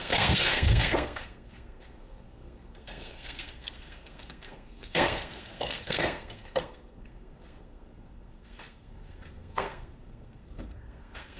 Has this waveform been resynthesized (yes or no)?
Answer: yes